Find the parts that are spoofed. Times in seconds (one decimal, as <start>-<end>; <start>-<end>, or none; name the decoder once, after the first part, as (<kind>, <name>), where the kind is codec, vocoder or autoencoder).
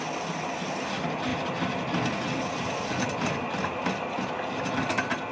none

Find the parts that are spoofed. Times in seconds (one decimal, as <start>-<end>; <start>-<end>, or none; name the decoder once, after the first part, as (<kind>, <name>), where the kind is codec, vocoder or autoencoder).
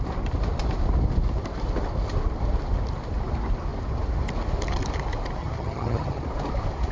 5.4-6.2 (vocoder, HiFi-GAN)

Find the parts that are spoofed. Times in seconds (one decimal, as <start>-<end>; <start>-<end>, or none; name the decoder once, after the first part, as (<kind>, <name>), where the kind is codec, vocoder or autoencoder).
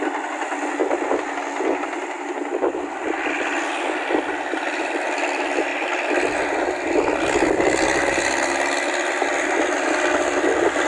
none